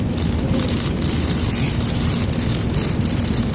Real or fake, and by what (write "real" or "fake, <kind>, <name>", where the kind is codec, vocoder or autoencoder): real